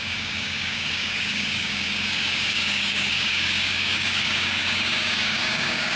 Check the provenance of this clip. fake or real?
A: fake